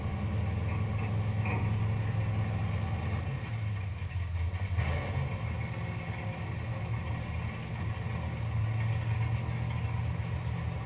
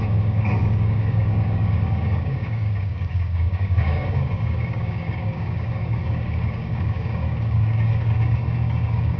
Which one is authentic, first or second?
first